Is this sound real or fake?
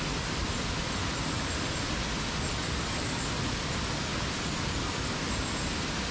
real